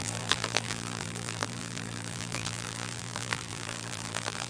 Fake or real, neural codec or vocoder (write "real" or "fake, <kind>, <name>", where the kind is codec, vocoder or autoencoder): fake, vocoder, BigVGAN v2